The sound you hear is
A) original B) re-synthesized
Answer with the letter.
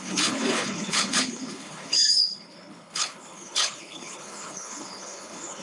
B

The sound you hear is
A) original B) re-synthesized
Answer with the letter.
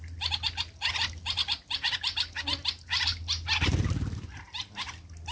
A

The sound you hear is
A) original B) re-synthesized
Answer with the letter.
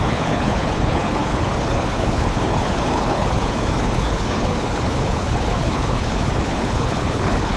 B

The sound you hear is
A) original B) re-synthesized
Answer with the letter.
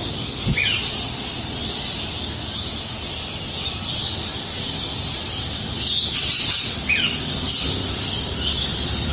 A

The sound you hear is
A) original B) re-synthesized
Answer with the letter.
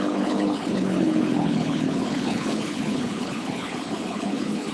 B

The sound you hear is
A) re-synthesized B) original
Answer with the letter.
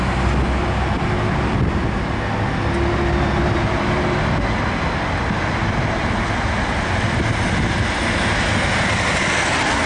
B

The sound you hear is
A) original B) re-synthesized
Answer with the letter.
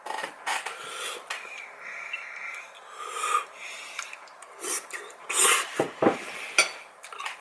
A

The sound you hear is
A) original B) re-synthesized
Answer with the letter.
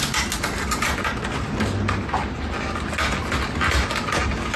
A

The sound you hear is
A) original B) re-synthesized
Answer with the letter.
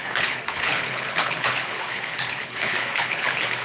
B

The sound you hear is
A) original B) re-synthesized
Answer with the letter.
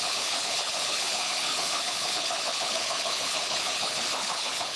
B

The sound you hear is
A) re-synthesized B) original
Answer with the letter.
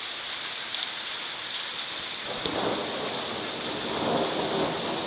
B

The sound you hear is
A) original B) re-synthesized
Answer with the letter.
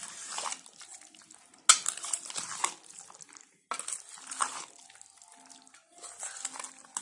A